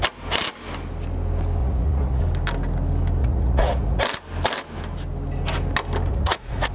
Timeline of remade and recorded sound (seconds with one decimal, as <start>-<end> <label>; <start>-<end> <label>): 0.0-1.6 recorded; 1.6-2.2 remade; 2.2-3.2 recorded; 3.2-4.0 remade; 4.0-6.1 recorded; 6.1-6.7 remade